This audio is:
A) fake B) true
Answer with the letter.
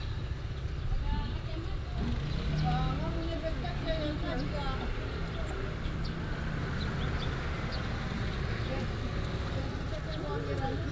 B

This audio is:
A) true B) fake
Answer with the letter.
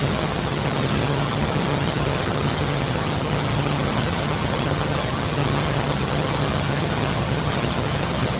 B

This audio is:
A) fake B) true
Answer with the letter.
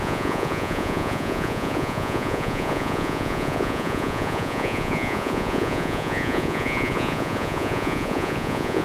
A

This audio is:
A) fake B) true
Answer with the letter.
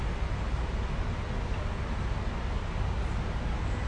B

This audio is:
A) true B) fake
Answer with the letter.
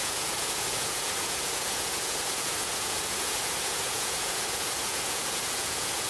B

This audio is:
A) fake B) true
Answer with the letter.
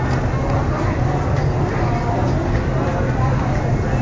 B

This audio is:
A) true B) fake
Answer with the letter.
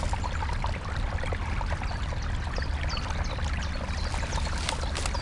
A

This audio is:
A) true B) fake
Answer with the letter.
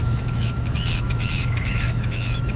B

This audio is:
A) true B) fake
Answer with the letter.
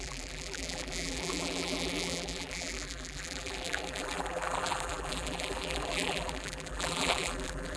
B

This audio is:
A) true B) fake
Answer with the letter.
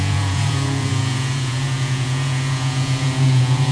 B